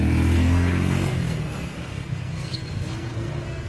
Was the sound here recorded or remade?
remade